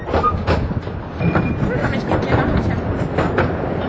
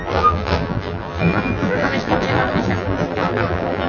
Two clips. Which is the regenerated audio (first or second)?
second